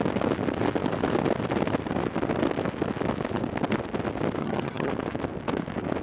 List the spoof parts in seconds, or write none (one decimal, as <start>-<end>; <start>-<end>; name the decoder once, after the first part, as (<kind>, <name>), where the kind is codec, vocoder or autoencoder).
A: 4.4-4.9 (vocoder, HiFi-GAN)